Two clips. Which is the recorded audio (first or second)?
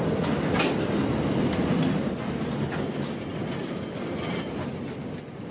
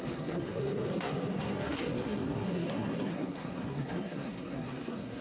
first